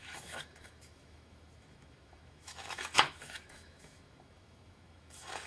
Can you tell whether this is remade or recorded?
remade